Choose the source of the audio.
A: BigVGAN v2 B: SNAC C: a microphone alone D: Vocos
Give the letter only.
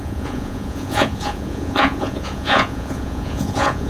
D